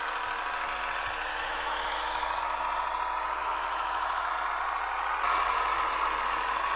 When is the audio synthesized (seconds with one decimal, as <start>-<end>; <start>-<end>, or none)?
1.3-2.4; 3.4-4.3